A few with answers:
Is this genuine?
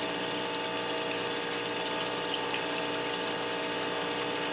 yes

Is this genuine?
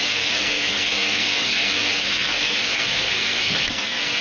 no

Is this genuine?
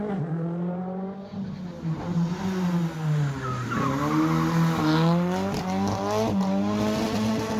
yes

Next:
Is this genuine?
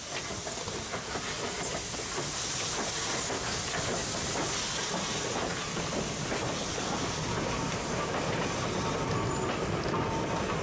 yes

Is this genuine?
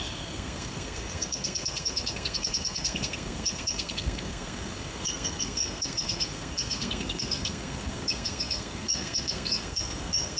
no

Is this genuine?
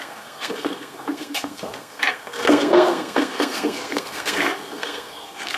no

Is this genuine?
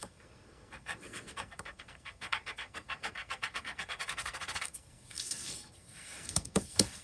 no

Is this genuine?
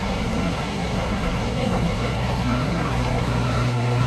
no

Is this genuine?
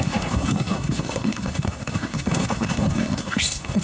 no